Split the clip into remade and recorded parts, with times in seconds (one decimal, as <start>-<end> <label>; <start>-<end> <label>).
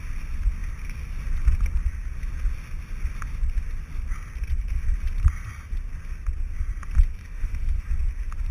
0.0-7.2 recorded; 7.2-7.9 remade; 7.9-8.5 recorded